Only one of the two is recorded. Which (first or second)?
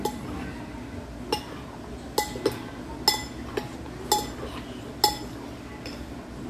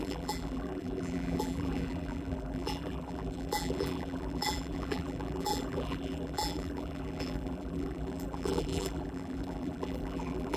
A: first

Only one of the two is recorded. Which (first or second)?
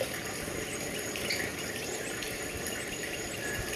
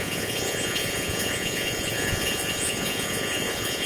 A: first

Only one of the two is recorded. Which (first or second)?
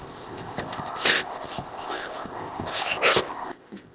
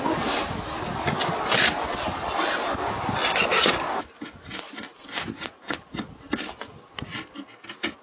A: second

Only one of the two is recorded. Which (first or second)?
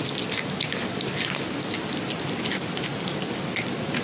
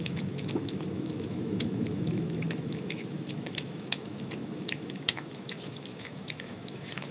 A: first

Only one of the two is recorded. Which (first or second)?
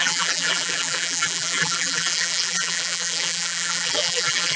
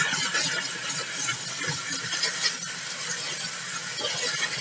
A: second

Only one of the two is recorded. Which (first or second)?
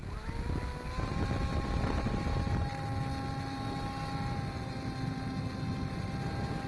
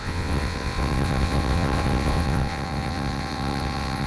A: first